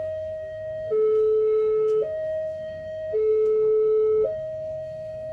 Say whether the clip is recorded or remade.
remade